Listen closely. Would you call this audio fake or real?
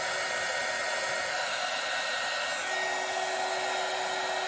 real